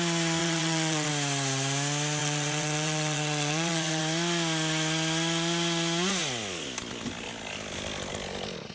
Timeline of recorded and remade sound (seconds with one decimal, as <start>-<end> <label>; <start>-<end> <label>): 0.0-0.4 recorded; 0.4-1.1 remade; 1.1-2.2 recorded; 2.2-4.0 remade; 4.0-8.7 recorded

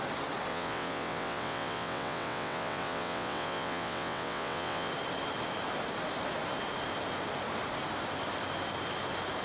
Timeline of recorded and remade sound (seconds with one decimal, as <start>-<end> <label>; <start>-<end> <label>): 0.0-0.5 recorded; 0.5-4.9 remade; 4.9-9.4 recorded